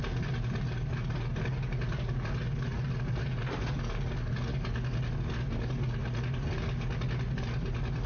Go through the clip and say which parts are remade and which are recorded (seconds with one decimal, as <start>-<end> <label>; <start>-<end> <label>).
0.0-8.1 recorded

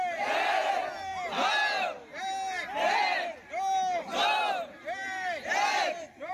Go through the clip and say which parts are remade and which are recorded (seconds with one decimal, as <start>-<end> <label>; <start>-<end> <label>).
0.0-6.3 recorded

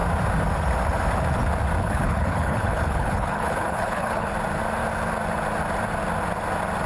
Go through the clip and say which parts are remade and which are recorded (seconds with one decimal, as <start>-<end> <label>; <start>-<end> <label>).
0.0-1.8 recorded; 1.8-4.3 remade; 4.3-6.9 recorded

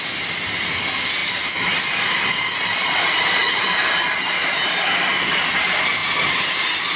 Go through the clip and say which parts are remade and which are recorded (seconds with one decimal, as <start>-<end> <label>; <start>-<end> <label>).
0.0-7.0 recorded

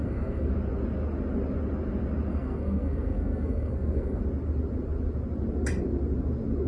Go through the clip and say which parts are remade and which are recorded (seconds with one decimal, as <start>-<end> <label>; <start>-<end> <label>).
0.0-0.5 remade; 0.5-2.3 recorded; 2.3-4.2 remade; 4.2-6.7 recorded

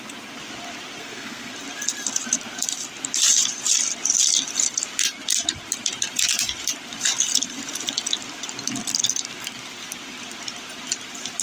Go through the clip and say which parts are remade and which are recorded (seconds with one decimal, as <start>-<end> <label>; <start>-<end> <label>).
0.0-1.0 recorded; 1.0-1.5 remade; 1.5-11.4 recorded

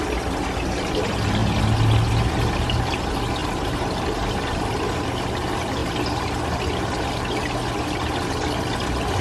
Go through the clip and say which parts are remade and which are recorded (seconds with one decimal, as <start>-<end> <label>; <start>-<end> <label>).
0.0-3.4 recorded; 3.4-4.7 remade; 4.7-5.8 recorded; 5.8-6.4 remade; 6.4-9.2 recorded